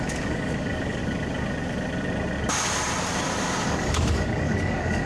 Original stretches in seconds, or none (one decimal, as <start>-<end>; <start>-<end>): 1.0-3.7